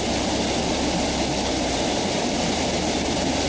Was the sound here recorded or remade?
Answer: recorded